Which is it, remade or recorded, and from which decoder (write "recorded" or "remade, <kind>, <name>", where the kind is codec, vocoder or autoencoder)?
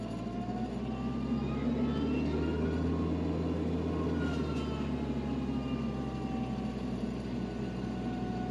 recorded